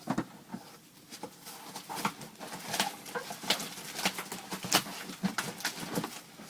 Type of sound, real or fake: real